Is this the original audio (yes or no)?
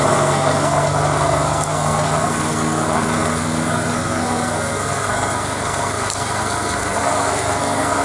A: no